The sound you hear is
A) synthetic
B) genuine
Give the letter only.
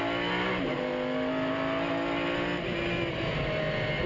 B